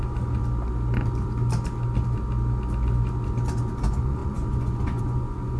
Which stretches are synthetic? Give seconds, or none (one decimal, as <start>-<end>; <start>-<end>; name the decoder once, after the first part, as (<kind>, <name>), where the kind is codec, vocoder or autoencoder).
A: 0.0-0.4 (vocoder, Vocos); 3.8-5.6